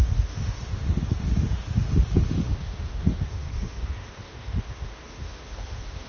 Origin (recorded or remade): remade